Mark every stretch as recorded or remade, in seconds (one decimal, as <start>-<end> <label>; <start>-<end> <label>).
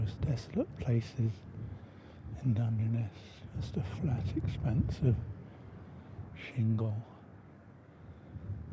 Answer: 0.0-1.3 recorded; 1.3-2.8 remade; 2.8-5.4 recorded; 5.4-6.8 remade; 6.8-7.3 recorded; 7.3-8.7 remade